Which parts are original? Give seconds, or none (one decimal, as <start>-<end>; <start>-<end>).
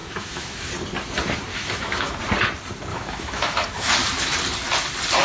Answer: 0.7-1.5; 2.2-2.9; 3.9-5.2